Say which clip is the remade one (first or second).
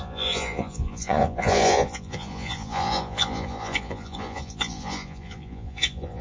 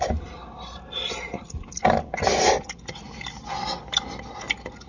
first